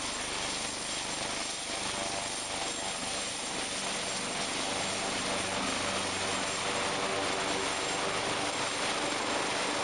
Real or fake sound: real